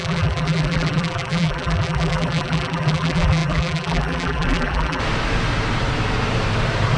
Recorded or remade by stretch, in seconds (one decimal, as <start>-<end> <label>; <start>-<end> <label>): 0.0-5.0 remade; 5.0-7.0 recorded